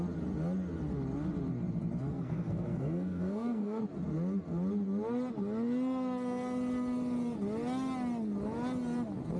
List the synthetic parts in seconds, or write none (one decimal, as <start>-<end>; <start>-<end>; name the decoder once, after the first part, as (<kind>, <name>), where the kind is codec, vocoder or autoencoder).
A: 2.1-3.8 (codec, SNAC)